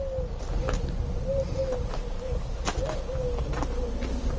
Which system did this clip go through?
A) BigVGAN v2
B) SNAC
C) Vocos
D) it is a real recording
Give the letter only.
D